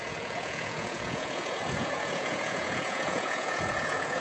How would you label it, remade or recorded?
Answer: remade